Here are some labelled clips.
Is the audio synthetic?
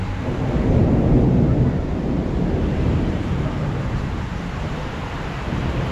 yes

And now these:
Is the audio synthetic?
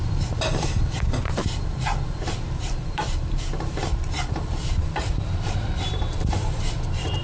yes